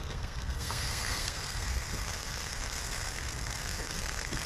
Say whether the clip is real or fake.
fake